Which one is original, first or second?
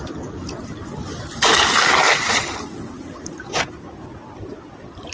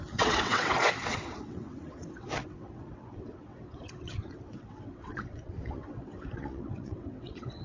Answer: first